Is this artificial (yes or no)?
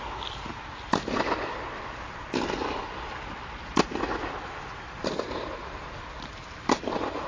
no